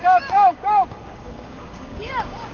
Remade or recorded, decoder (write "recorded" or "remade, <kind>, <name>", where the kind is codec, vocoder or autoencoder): remade, codec, DAC